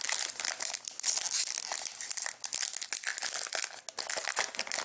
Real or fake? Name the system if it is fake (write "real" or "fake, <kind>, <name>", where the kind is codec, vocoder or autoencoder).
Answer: real